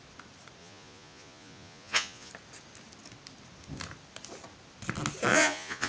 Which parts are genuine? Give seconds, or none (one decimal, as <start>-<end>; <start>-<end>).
0.0-0.6; 2.3-5.3